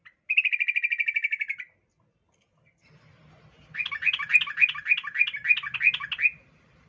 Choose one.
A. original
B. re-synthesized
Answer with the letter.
A